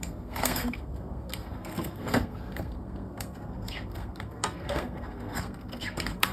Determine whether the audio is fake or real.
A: fake